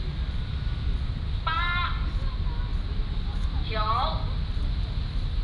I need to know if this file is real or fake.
real